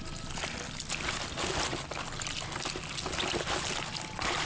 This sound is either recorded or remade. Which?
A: recorded